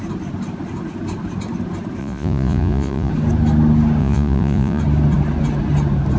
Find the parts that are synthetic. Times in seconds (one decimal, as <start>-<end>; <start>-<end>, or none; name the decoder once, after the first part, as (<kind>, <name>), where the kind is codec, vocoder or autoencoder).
2.0-3.1 (vocoder, Vocos); 4.0-4.8